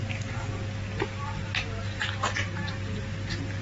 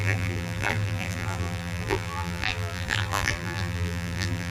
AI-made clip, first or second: second